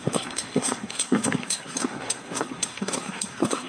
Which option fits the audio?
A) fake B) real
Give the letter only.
A